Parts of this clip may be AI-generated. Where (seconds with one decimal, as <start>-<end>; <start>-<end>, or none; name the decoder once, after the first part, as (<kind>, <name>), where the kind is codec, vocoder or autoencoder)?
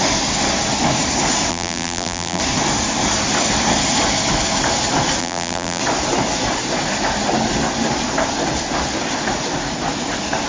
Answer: 1.5-2.4 (vocoder, BigVGAN v2); 5.2-5.8